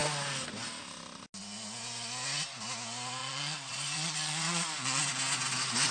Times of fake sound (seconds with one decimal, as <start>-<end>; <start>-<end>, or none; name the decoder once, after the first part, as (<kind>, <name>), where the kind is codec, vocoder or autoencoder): 3.2-5.1 (vocoder, Vocos)